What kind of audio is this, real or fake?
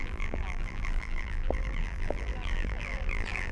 fake